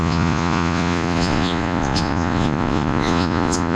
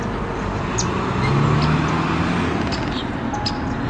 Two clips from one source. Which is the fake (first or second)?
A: first